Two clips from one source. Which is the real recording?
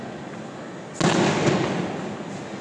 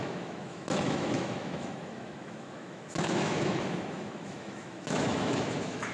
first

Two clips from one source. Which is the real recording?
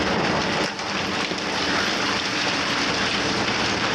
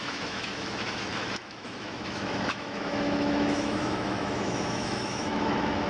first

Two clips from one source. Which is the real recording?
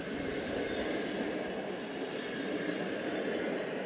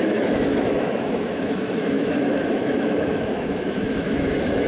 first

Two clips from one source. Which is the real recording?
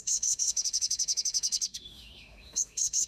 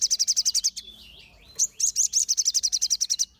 second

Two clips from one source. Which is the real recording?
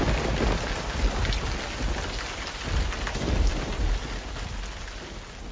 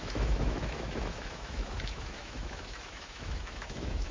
first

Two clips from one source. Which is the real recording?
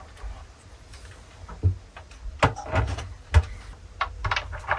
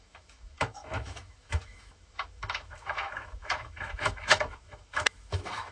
first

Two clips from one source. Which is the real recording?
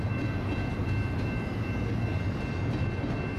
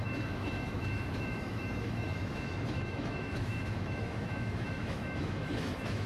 first